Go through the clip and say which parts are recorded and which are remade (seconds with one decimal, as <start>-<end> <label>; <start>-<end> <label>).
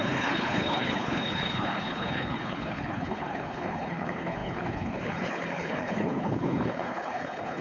0.0-7.6 remade